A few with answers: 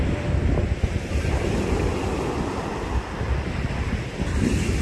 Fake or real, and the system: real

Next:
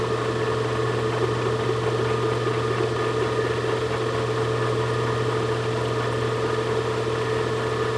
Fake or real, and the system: real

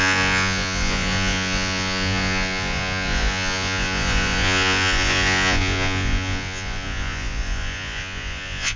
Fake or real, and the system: fake, vocoder, Vocos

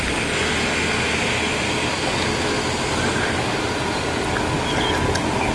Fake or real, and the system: real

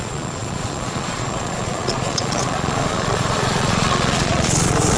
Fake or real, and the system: fake, vocoder, Vocos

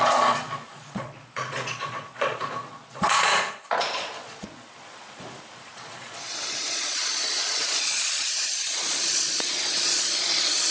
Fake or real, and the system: fake, vocoder, Vocos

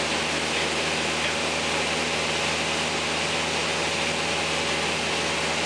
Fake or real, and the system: real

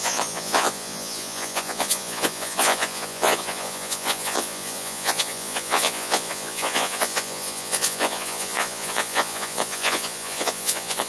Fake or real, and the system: fake, vocoder, Vocos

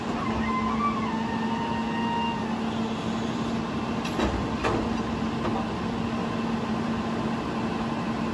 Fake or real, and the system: real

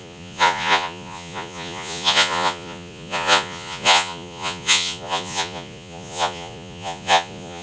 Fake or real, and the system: fake, vocoder, Vocos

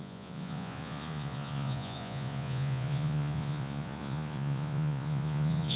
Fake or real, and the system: fake, vocoder, Vocos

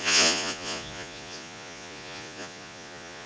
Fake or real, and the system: fake, vocoder, Vocos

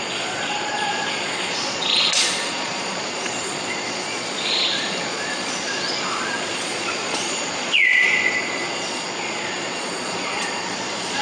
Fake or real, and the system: fake, vocoder, Vocos